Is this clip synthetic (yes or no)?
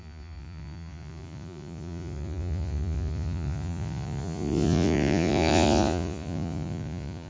yes